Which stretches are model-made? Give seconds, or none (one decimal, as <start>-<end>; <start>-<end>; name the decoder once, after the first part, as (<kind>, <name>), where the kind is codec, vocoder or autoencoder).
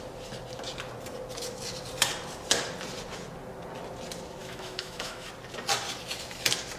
4.4-5.3 (autoencoder, DAC-VAE)